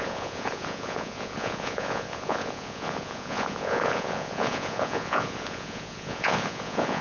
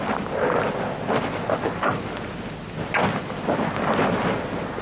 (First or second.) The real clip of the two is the second